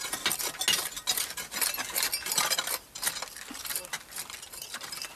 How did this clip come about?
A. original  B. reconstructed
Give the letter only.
A